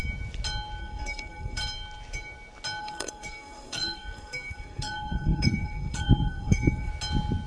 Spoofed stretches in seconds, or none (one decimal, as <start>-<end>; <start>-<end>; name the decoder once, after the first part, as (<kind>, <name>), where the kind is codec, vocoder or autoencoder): 0.8-1.6 (codec, SNAC); 2.8-6.9